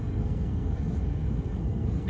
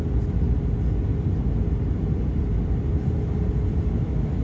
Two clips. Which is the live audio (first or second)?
second